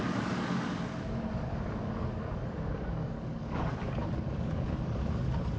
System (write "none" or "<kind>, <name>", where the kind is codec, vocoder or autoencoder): codec, DAC